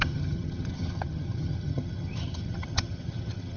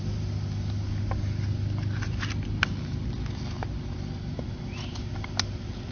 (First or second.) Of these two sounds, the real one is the second